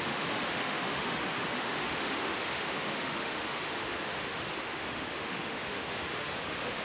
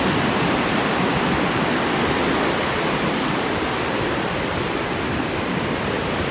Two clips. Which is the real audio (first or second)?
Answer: second